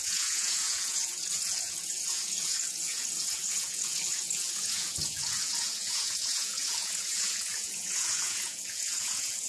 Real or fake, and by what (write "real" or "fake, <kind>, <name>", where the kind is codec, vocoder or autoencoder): fake, vocoder, Vocos